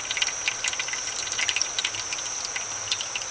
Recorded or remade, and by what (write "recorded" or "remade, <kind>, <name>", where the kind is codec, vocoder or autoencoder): recorded